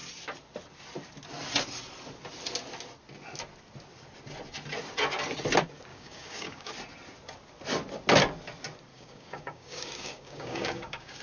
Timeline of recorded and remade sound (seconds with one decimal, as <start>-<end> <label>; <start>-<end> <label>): 0.0-5.9 recorded; 5.9-6.7 remade; 6.7-8.9 recorded; 8.9-11.2 remade